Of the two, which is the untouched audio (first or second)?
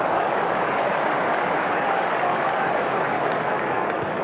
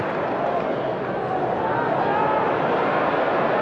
second